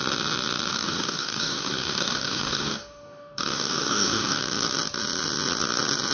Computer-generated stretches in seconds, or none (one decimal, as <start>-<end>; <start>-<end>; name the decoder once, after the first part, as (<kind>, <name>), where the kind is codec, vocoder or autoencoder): 0.7-4.4 (codec, DAC)